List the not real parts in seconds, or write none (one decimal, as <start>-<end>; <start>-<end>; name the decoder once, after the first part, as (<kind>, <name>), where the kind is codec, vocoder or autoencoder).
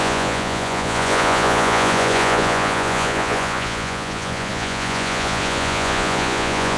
0.0-6.8 (vocoder, Vocos)